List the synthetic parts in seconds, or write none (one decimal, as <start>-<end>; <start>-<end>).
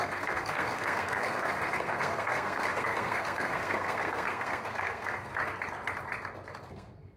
0.0-5.3; 6.7-7.2